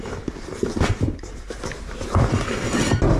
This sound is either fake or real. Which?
fake